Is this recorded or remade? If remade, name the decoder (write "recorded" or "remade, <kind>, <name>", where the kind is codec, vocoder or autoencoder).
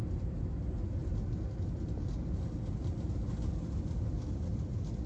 recorded